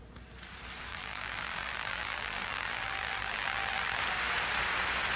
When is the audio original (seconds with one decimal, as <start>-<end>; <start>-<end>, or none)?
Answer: 0.0-0.9; 4.0-5.2